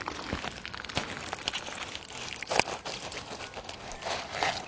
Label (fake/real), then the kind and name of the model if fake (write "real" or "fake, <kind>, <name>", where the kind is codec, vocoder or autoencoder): real